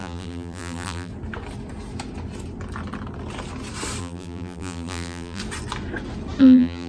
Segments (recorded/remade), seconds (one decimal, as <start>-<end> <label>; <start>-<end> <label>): 0.0-1.1 remade; 1.1-4.0 recorded; 4.0-5.4 remade; 5.4-6.4 recorded; 6.4-6.9 remade